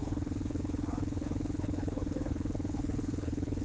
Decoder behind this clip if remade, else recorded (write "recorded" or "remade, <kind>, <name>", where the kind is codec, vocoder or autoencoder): remade, codec, HILCodec